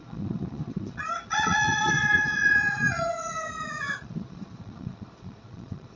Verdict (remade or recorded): remade